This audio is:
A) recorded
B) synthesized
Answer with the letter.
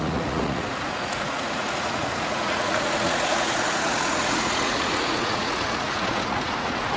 B